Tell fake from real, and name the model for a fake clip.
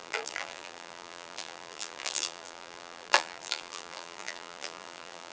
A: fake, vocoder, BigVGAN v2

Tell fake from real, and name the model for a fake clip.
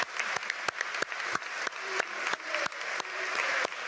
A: fake, vocoder, BigVGAN v2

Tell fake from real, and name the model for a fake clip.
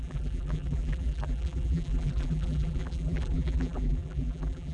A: fake, vocoder, BigVGAN v2